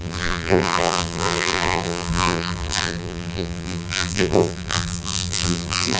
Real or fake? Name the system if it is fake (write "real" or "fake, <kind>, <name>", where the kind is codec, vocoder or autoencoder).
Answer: fake, vocoder, BigVGAN v2